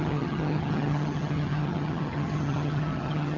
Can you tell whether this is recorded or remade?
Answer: remade